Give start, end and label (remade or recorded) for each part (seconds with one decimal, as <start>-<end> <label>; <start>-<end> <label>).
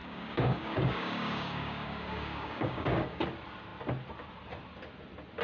0.0-3.2 remade; 3.2-5.4 recorded